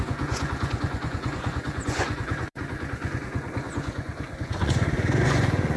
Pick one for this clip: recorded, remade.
remade